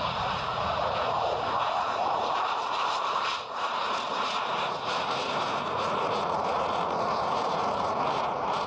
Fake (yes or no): yes